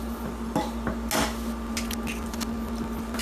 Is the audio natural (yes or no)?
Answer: yes